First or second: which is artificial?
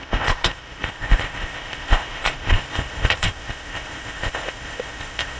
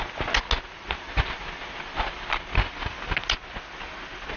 first